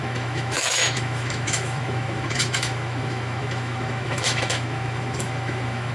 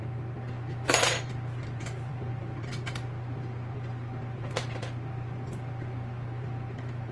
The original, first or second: second